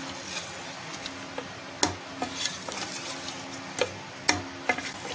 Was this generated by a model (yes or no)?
no